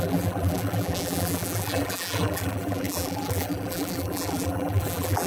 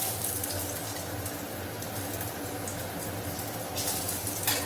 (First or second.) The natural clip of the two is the second